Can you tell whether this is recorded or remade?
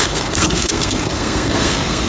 remade